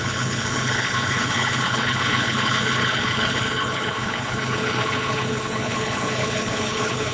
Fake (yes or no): yes